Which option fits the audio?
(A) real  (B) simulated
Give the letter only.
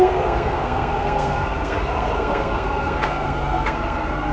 B